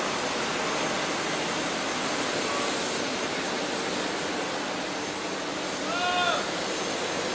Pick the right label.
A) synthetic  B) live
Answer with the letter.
B